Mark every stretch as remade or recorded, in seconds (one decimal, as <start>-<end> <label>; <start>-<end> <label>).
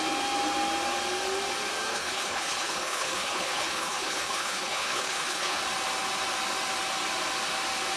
0.0-1.9 recorded; 1.9-5.6 remade; 5.6-8.0 recorded